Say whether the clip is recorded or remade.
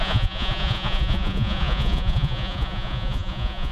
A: remade